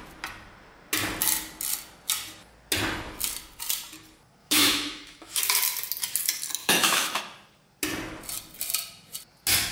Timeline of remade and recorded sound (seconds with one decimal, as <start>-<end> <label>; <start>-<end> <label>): 0.0-4.4 recorded; 4.4-5.4 remade; 5.4-6.6 recorded; 6.6-7.2 remade; 7.2-9.7 recorded